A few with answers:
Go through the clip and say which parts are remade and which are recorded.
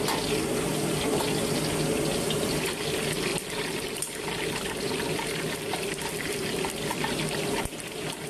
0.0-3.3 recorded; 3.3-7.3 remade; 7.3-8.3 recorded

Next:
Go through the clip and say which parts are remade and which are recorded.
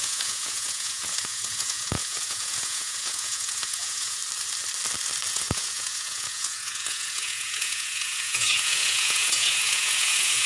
0.0-4.2 remade; 4.2-5.3 recorded; 5.3-10.5 remade